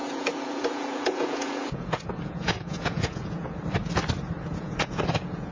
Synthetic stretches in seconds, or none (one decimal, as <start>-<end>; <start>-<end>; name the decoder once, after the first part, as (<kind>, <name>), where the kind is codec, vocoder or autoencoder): 0.0-3.8 (vocoder, Vocos); 4.4-5.5